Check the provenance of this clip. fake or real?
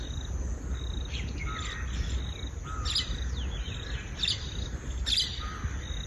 real